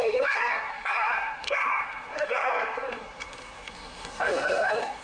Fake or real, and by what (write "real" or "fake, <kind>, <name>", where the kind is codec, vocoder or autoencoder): fake, codec, SNAC